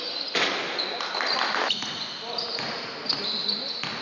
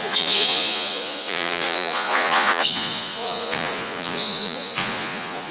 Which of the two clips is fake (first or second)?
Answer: second